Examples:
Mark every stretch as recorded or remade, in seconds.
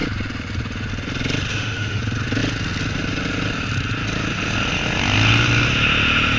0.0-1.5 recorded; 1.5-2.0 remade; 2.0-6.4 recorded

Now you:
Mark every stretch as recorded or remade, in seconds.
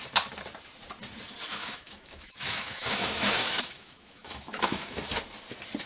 0.0-1.5 recorded; 1.5-5.0 remade; 5.0-5.9 recorded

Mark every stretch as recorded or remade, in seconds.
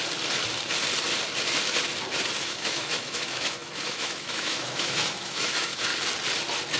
0.0-2.4 recorded; 2.4-5.9 remade; 5.9-6.8 recorded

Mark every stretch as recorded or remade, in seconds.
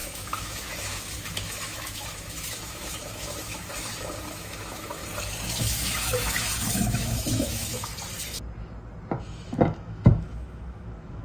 0.0-5.0 remade; 5.0-5.6 recorded; 5.6-7.9 remade; 7.9-9.2 recorded; 9.2-11.2 remade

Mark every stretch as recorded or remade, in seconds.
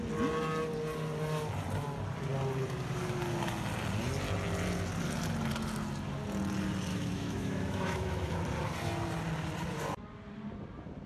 0.0-6.9 recorded; 6.9-8.3 remade; 8.3-11.1 recorded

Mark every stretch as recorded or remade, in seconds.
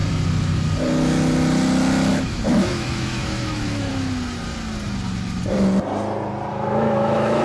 0.0-2.1 recorded; 2.1-3.9 remade; 3.9-6.5 recorded; 6.5-7.4 remade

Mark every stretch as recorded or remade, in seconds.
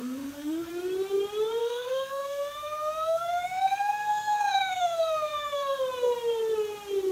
0.0-0.7 remade; 0.7-1.6 recorded; 1.6-5.8 remade; 5.8-7.1 recorded